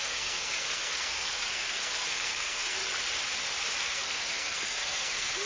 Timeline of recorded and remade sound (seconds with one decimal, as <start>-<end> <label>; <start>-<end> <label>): 0.0-2.8 remade; 2.8-3.8 recorded; 3.8-5.5 remade